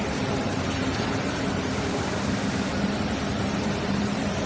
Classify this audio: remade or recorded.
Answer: remade